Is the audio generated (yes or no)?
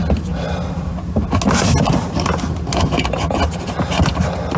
no